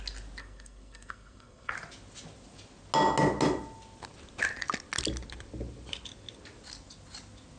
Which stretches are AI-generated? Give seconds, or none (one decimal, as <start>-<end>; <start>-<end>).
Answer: 0.4-1.7